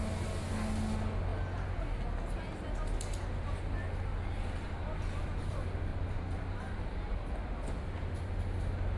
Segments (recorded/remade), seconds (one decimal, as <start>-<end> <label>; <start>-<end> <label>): 0.0-5.9 recorded; 5.9-7.3 remade; 7.3-9.0 recorded